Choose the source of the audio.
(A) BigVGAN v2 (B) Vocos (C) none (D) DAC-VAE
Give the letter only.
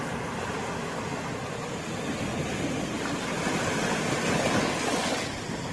C